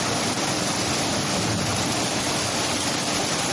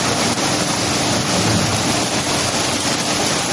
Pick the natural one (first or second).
second